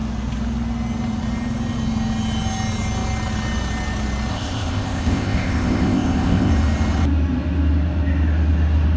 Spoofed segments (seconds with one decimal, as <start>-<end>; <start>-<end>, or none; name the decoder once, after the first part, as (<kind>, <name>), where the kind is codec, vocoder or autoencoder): 4.3-6.5 (codec, ZipCodec)